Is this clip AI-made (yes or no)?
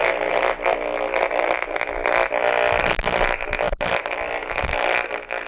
no